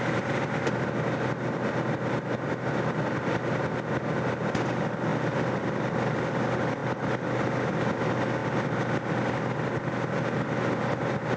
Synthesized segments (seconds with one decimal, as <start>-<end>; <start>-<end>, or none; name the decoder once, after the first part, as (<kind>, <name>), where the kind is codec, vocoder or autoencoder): none

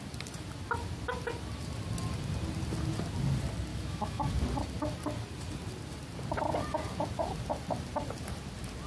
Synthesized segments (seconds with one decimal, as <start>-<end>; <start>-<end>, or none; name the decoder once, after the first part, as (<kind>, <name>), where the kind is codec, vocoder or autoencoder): 3.7-4.3 (autoencoder, DAC-VAE)

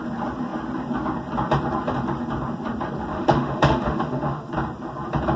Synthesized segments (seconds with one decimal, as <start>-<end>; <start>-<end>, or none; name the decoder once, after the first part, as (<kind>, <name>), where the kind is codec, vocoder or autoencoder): 3.1-4.5 (autoencoder, DAC-VAE)

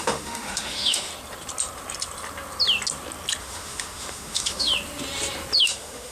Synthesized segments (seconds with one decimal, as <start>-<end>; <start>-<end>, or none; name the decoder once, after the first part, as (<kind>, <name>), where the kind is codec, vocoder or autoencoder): 0.0-1.1 (autoencoder, DAC-VAE); 3.4-4.7; 5.6-6.1

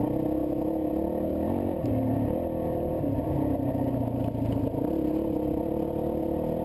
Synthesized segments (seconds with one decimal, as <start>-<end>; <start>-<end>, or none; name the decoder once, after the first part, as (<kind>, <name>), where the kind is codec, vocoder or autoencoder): 0.4-0.9 (autoencoder, DAC-VAE)

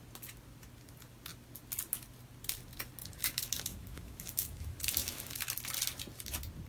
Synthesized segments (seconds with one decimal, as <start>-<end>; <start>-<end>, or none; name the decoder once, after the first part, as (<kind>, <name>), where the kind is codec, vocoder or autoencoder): 3.0-5.5 (autoencoder, DAC-VAE)